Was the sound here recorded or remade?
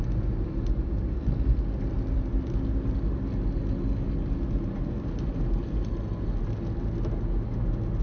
recorded